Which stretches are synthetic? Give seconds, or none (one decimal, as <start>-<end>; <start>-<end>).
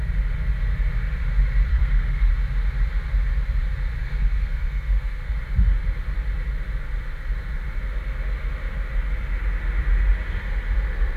1.7-2.3; 4.0-5.3